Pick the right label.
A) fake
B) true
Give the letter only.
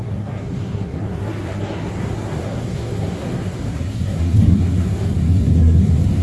A